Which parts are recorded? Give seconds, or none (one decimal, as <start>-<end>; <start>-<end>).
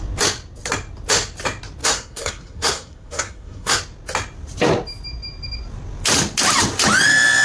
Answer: 0.0-1.8; 3.8-7.4